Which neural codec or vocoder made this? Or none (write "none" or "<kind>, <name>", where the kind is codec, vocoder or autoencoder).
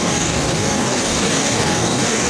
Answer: codec, DAC